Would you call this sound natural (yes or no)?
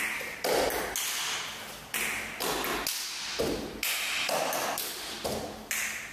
yes